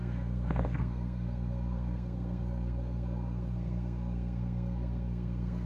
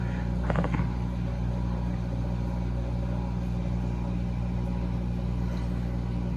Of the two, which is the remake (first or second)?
first